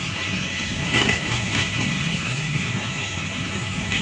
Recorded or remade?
remade